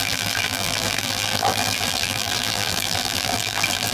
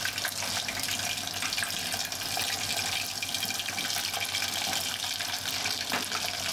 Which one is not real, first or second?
first